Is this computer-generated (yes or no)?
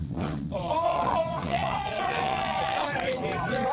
yes